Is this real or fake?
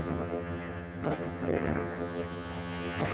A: fake